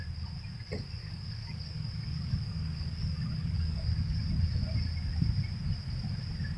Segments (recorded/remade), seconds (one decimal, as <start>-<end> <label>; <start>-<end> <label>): 0.0-1.0 recorded; 1.0-4.2 remade; 4.2-6.6 recorded